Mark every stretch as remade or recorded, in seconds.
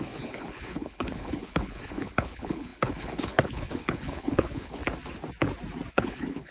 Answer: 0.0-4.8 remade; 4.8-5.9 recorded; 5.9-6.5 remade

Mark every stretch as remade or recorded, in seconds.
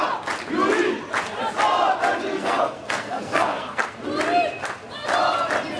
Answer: 0.0-2.3 recorded; 2.3-4.0 remade; 4.0-5.8 recorded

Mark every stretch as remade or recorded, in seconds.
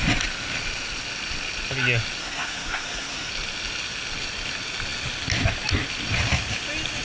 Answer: 0.0-2.2 recorded; 2.2-3.3 remade; 3.3-7.0 recorded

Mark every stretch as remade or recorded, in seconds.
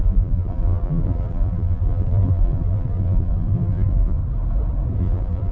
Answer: 0.0-4.2 remade; 4.2-5.0 recorded; 5.0-5.5 remade